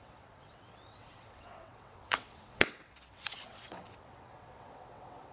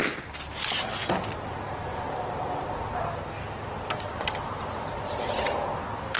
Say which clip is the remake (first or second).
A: first